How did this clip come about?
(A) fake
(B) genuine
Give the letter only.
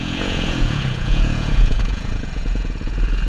A